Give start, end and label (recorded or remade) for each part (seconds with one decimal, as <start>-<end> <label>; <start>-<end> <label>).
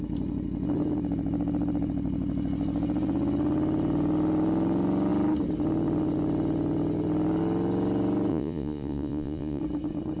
0.0-8.3 recorded; 8.3-9.6 remade; 9.6-10.2 recorded